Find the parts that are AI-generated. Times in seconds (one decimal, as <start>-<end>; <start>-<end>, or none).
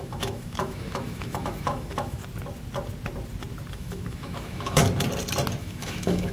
0.0-2.2; 3.7-4.8; 5.6-6.3